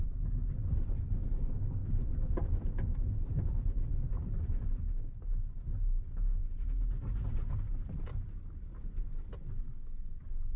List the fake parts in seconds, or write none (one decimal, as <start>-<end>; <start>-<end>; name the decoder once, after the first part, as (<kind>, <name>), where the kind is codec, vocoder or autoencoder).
1.8-4.1 (vocoder, BigVGAN v2); 6.4-7.3; 7.7-9.0